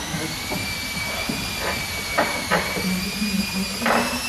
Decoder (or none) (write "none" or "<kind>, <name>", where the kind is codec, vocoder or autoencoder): none